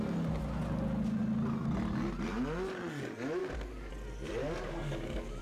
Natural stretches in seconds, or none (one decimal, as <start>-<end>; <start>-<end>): 0.0-3.4; 3.9-4.4